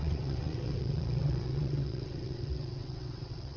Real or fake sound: fake